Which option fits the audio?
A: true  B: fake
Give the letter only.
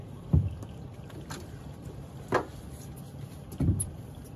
A